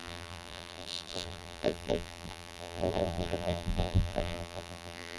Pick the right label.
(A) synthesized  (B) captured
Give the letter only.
A